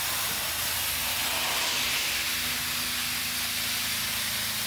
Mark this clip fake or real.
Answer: real